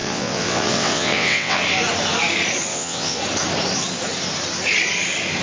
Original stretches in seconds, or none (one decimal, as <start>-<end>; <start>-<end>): 1.6-2.7; 3.2-5.4